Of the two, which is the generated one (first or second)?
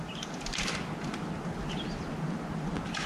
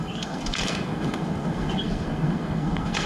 second